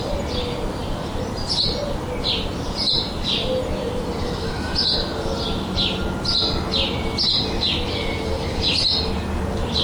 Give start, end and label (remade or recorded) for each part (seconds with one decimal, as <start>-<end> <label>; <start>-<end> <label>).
0.0-9.8 recorded